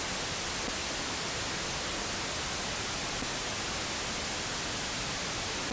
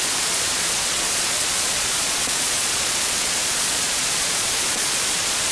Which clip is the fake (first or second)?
second